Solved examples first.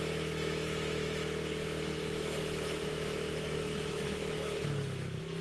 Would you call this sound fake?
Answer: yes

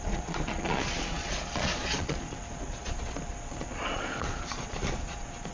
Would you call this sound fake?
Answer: yes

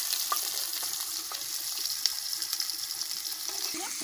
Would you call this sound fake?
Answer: yes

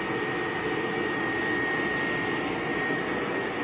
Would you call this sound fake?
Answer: no